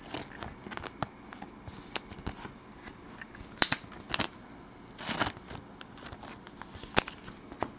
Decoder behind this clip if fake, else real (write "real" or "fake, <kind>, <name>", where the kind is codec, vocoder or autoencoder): real